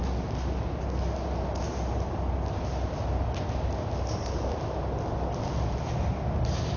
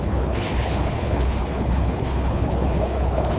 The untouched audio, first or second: first